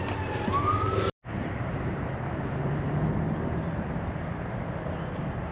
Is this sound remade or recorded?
recorded